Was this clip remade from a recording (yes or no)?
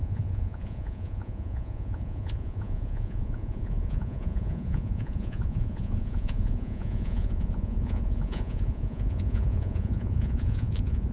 yes